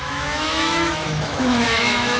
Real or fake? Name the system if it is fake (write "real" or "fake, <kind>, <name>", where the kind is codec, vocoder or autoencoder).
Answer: fake, autoencoder, DAC-VAE